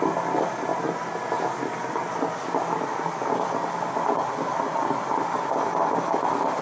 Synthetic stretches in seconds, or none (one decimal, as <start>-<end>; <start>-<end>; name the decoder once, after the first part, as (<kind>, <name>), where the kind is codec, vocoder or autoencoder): none